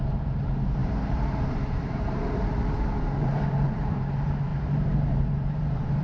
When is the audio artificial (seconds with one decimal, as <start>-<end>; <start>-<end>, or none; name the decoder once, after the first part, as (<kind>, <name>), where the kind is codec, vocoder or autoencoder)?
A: 0.0-6.0 (vocoder, BigVGAN v2)